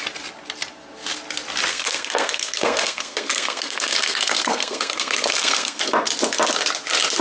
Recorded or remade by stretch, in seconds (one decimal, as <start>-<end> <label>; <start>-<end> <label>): 0.0-1.7 recorded; 1.7-5.8 remade; 5.8-7.2 recorded